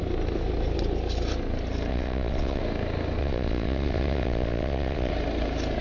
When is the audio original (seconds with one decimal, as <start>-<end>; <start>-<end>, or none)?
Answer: 0.0-1.9; 2.6-3.2; 5.1-5.8